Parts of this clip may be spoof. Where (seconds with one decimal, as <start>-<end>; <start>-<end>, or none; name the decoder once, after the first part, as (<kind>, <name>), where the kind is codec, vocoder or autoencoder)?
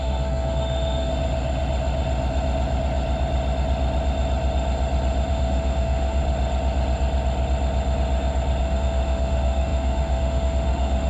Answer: 0.0-1.1 (autoencoder, DAC-VAE); 5.3-6.2; 8.6-11.1